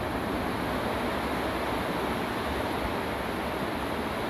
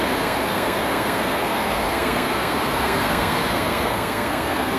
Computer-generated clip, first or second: second